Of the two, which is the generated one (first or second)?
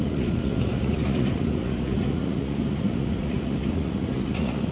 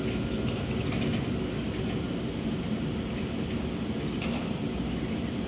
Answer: first